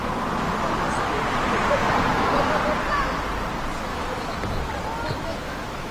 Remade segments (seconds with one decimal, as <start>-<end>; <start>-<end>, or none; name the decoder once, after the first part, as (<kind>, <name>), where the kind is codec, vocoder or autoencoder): 3.9-4.6 (autoencoder, DAC-VAE); 5.3-5.9